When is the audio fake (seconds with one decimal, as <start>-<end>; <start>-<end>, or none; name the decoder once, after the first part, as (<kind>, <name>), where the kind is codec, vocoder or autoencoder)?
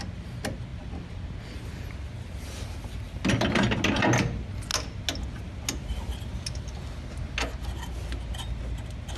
none